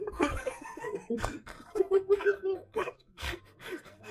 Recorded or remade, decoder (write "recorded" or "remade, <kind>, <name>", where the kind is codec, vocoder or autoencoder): remade, codec, SNAC